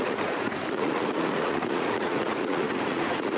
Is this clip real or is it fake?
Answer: fake